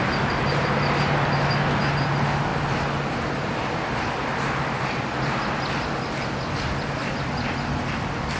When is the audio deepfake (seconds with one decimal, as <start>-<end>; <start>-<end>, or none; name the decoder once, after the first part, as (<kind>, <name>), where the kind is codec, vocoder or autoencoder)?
none